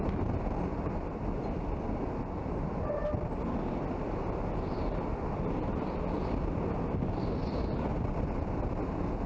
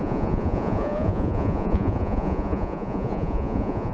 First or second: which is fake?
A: second